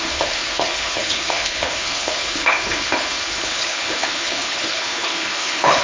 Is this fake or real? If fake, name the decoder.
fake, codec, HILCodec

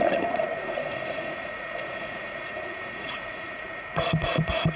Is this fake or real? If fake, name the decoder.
fake, vocoder, Vocos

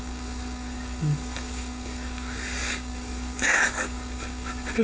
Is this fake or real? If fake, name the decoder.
fake, codec, DAC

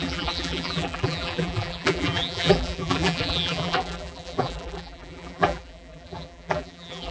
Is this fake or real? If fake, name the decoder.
fake, vocoder, BigVGAN v2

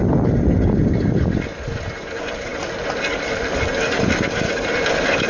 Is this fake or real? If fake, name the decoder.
real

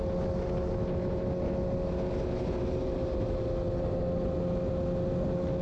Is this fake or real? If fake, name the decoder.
real